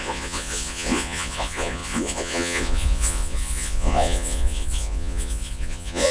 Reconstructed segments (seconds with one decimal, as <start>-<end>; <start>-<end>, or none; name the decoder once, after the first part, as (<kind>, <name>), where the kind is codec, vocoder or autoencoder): 0.0-6.1 (vocoder, Vocos)